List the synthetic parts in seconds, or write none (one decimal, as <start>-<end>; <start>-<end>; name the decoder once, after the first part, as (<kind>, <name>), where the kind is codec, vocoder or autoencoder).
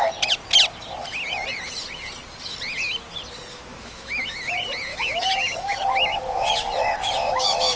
3.5-4.5 (autoencoder, DAC-VAE); 4.9-7.8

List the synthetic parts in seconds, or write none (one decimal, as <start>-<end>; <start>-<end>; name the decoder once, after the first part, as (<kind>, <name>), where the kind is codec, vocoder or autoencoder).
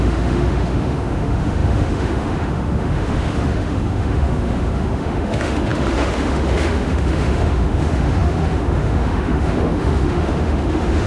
0.0-11.1 (autoencoder, DAC-VAE)